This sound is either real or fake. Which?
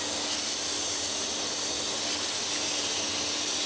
real